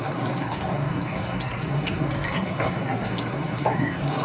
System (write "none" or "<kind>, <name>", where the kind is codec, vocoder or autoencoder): codec, SNAC